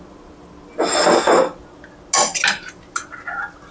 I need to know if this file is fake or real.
real